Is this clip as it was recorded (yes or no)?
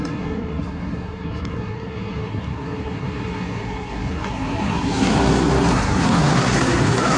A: no